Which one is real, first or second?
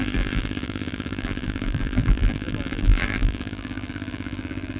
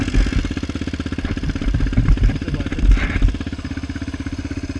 second